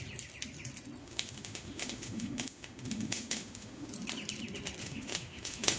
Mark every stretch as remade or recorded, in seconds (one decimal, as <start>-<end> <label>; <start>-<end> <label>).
0.0-1.0 recorded; 1.0-3.9 remade; 3.9-4.8 recorded; 4.8-5.8 remade